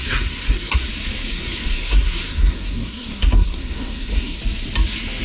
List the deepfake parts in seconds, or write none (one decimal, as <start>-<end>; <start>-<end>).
0.0-0.8; 1.3-4.4